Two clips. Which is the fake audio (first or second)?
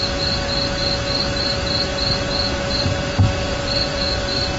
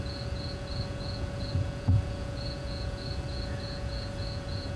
second